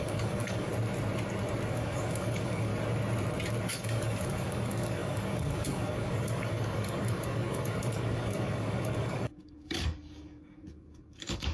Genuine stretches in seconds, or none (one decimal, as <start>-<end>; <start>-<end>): 0.7-1.7; 2.7-3.7